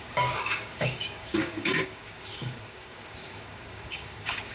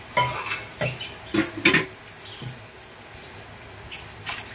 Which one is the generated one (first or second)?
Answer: first